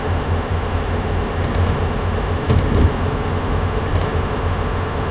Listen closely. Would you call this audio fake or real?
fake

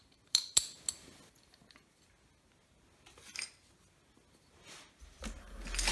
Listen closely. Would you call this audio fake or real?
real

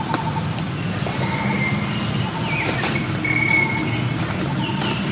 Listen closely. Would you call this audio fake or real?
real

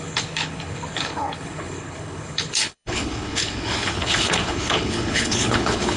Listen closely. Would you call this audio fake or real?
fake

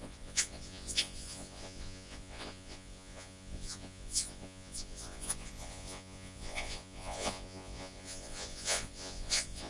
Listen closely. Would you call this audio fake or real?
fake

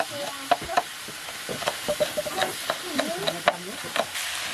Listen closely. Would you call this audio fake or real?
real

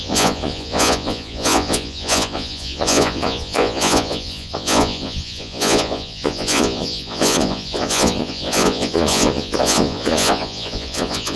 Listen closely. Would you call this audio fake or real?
fake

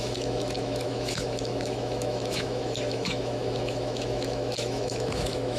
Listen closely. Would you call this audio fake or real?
fake